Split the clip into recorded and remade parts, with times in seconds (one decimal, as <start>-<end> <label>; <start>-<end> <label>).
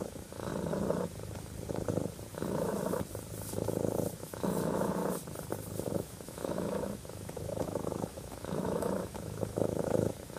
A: 0.0-0.5 remade; 0.5-2.3 recorded; 2.3-2.7 remade; 2.7-4.1 recorded; 4.1-5.0 remade; 5.0-5.9 recorded; 5.9-10.4 remade